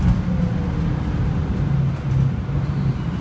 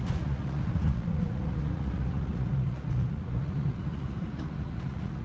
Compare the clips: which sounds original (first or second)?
first